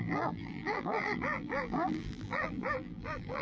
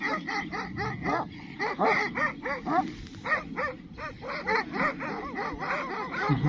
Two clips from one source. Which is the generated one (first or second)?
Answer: first